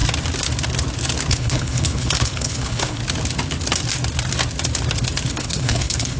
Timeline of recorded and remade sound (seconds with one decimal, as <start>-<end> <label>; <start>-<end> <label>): 0.0-1.3 recorded; 1.3-3.0 remade; 3.0-5.3 recorded; 5.3-6.2 remade